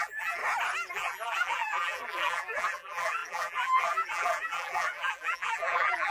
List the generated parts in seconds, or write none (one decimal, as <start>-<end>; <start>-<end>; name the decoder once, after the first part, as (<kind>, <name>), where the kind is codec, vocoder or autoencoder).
0.0-0.4 (vocoder, BigVGAN v2); 0.9-6.1